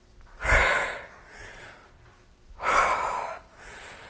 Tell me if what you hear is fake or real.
real